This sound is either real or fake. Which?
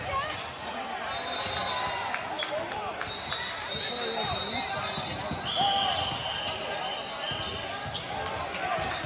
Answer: real